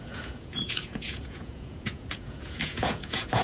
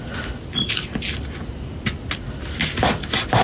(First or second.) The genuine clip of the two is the second